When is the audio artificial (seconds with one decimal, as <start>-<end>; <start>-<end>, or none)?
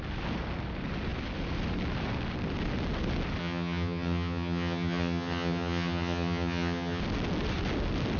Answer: 3.4-7.0